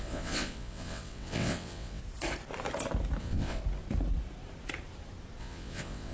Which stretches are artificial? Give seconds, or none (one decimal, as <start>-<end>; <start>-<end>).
0.0-2.0; 3.2-3.6; 5.4-6.1